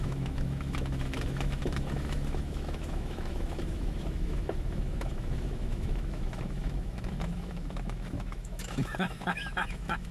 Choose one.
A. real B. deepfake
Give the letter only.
B